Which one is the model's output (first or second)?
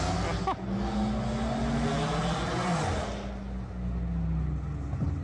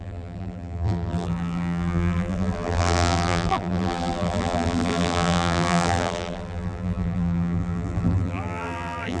second